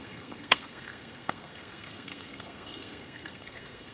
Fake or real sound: fake